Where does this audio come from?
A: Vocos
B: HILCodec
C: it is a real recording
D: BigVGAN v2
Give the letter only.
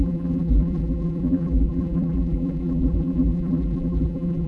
D